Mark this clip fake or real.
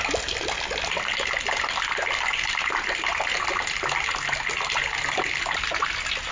real